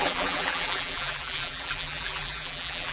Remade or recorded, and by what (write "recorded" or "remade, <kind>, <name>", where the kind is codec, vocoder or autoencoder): remade, vocoder, BigVGAN v2